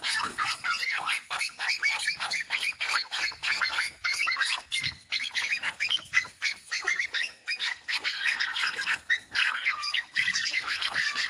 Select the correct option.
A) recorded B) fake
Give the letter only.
B